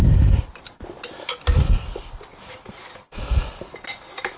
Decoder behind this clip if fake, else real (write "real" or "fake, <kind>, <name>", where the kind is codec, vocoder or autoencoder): real